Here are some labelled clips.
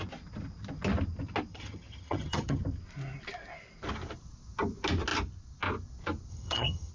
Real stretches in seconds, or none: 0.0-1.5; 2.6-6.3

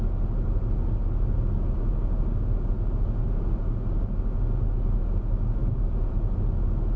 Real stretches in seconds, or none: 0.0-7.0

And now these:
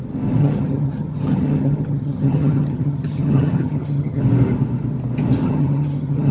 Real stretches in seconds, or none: 0.0-0.4; 4.2-5.4

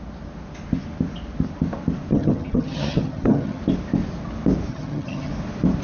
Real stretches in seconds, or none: 0.0-2.1; 3.6-4.7; 5.3-5.8